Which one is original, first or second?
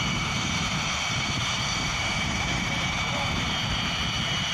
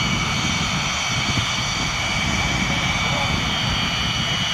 second